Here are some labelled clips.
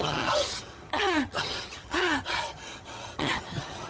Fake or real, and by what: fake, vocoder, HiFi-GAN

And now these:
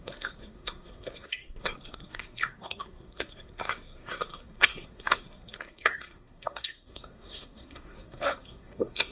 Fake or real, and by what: fake, codec, SNAC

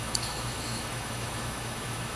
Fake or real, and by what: fake, autoencoder, DAC-VAE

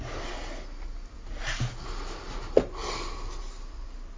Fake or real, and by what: real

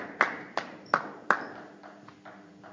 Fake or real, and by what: real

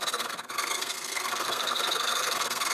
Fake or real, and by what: fake, codec, SNAC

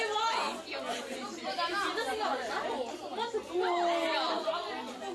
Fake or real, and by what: real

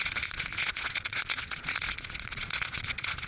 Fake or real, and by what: fake, vocoder, Vocos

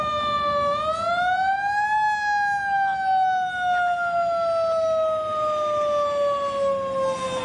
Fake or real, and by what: real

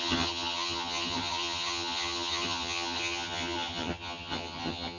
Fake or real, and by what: fake, vocoder, HiFi-GAN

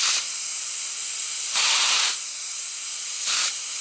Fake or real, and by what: real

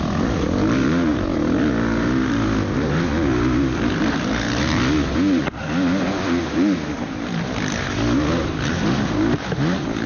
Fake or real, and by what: real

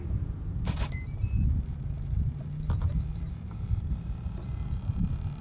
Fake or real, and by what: fake, vocoder, BigVGAN v2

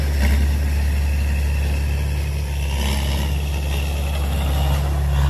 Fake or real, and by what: real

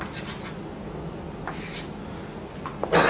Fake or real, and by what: real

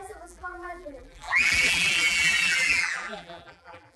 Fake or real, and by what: fake, vocoder, BigVGAN v2